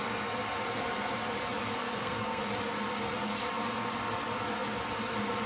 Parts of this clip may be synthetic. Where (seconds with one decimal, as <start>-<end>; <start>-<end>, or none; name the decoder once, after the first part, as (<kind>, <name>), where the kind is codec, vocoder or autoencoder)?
1.8-2.4 (codec, SNAC)